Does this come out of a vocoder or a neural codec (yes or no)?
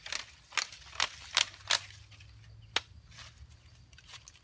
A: no